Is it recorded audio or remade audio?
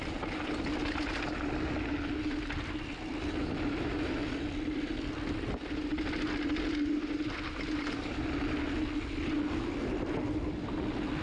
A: recorded